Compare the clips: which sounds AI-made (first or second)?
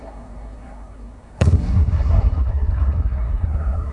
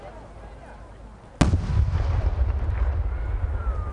first